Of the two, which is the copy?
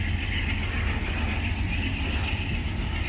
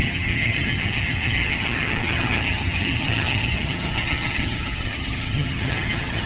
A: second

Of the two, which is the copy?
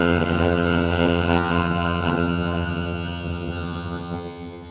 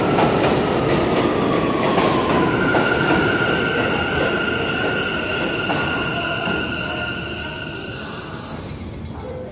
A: first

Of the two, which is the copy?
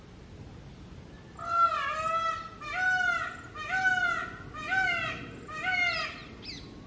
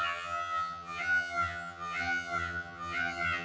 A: second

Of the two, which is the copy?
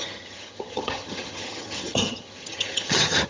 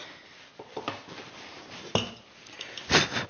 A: first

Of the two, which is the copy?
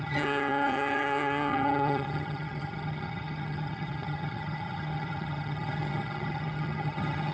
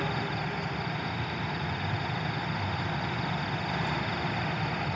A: first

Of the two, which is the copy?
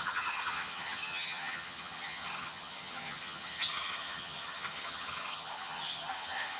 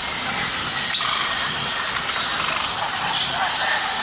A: first